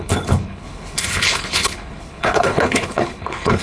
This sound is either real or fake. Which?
fake